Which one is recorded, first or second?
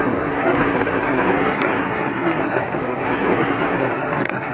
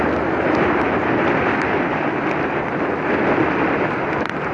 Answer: second